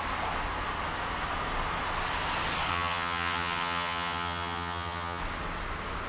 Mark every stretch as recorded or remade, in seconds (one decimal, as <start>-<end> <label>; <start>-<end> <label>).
0.0-2.7 recorded; 2.7-5.2 remade; 5.2-6.1 recorded